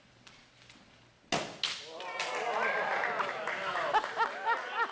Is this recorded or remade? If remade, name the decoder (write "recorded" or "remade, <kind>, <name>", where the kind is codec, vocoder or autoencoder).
recorded